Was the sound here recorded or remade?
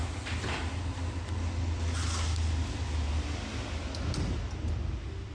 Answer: recorded